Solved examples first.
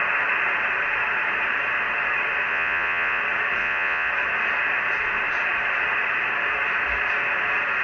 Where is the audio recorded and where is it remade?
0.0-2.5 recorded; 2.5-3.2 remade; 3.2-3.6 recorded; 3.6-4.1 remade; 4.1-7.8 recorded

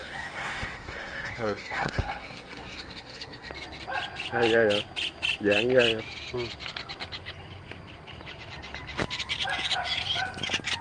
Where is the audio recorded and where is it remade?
0.0-3.5 remade; 3.5-10.8 recorded

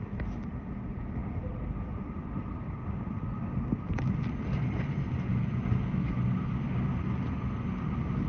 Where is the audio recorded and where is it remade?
0.0-1.2 recorded; 1.2-4.5 remade; 4.5-8.3 recorded